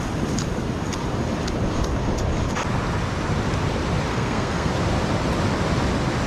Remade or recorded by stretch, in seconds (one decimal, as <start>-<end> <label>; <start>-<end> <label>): 0.0-4.1 recorded; 4.1-4.7 remade; 4.7-6.3 recorded